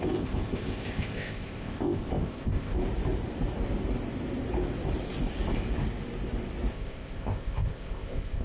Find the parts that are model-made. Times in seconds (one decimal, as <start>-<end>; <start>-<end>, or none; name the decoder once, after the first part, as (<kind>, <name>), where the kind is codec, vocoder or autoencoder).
0.0-2.8 (codec, ZipCodec); 6.7-8.4